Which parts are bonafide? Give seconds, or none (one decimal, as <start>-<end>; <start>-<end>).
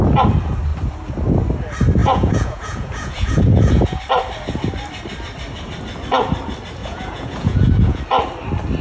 0.0-2.0; 4.0-6.8; 8.0-8.8